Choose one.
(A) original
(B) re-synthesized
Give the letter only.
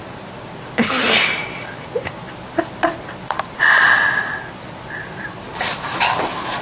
B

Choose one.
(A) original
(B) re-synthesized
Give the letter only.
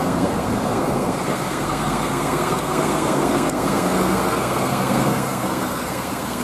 B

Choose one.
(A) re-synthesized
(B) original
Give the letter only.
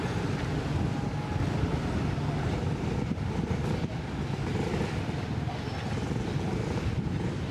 B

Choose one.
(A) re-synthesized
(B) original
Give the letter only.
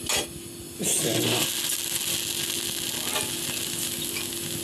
B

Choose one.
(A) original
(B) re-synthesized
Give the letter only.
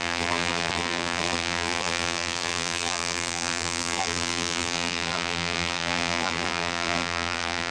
B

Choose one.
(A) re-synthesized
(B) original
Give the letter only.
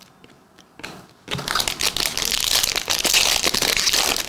B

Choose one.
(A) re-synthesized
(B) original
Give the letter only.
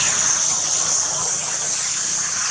B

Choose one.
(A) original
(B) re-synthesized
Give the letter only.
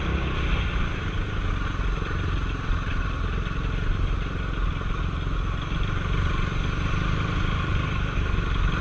A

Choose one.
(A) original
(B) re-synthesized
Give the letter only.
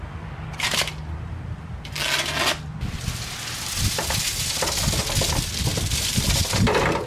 A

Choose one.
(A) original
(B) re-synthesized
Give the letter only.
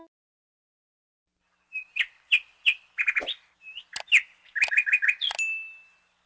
A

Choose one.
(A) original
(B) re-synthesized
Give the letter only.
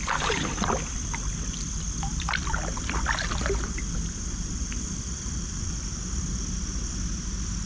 B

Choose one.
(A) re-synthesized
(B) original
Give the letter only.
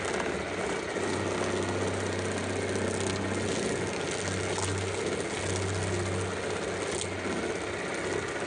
B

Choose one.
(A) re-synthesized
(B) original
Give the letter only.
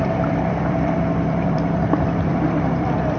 A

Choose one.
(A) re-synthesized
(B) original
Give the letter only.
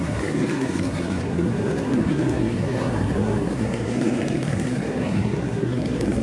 A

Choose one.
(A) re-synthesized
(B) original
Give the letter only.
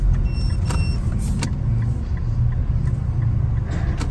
B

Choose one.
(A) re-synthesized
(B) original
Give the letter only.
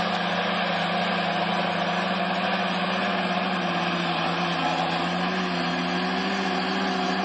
B